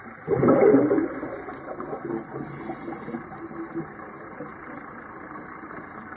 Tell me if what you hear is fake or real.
real